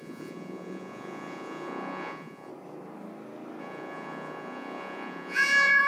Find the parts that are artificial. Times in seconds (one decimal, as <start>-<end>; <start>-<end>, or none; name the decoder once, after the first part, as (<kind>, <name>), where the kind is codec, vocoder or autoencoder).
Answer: 0.0-2.5 (vocoder, Vocos); 3.6-5.9